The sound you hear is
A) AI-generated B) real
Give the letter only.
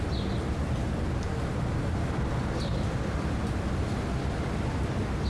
B